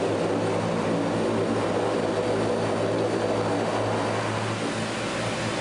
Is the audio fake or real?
real